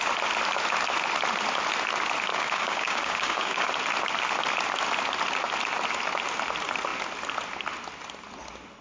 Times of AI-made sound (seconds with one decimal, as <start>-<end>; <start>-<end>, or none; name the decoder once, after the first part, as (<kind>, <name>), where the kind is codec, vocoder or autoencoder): 2.3-3.7 (codec, DAC)